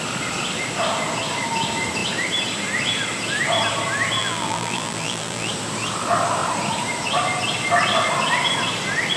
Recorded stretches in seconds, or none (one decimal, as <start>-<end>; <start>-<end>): 0.0-4.2; 5.5-9.2